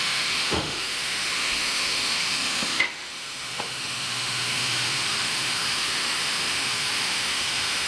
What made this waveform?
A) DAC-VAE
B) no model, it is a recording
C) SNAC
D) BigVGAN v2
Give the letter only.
A